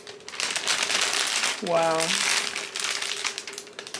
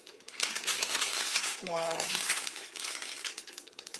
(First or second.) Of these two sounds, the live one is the first